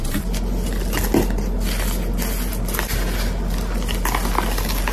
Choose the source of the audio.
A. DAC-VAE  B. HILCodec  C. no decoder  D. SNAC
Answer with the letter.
C